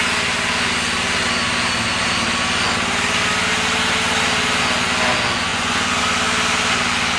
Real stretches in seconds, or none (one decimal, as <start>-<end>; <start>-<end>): 0.0-5.5; 6.0-7.2